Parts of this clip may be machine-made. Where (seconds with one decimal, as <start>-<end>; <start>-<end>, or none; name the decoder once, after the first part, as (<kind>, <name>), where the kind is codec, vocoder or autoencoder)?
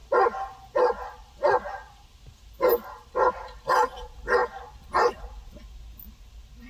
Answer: none